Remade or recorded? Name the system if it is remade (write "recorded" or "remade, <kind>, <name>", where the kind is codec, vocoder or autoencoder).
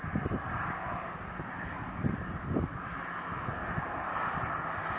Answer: recorded